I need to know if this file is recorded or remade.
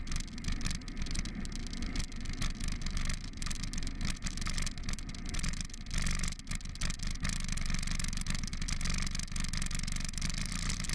recorded